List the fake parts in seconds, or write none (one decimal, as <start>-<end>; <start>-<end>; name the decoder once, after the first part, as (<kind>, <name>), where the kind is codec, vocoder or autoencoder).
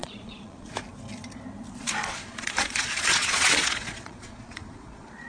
0.0-0.7 (vocoder, Vocos); 1.8-5.3